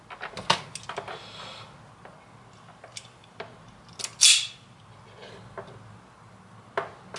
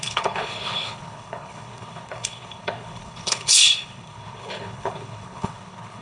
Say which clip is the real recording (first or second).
first